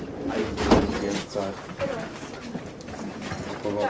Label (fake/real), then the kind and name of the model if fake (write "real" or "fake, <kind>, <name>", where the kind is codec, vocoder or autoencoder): real